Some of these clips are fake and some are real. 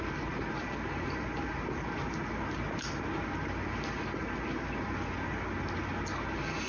real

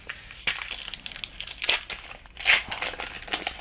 real